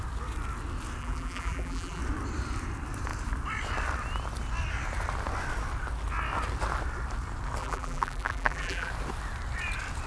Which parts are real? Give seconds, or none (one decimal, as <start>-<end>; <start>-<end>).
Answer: 0.0-1.0; 2.0-7.6; 8.9-10.1